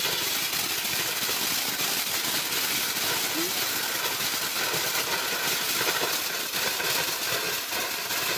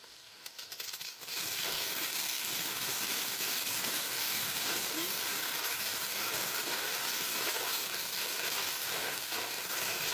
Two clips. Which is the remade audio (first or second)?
second